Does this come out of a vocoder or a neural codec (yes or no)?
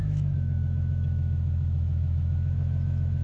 yes